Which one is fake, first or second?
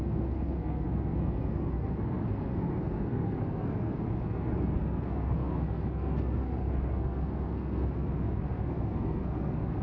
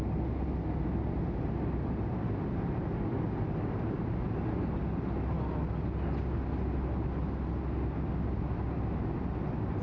first